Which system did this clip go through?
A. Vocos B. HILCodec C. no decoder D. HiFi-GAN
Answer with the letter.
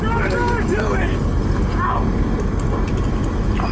C